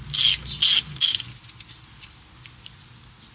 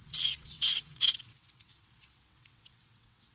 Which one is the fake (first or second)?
second